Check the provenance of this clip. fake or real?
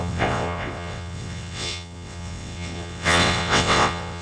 fake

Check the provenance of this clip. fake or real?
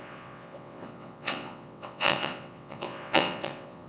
fake